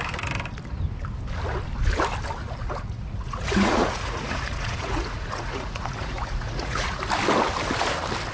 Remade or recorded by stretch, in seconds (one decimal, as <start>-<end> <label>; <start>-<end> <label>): 0.0-2.6 recorded; 2.6-7.0 remade; 7.0-8.3 recorded